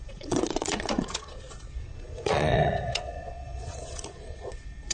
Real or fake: fake